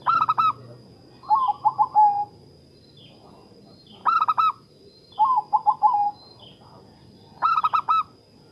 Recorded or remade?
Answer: recorded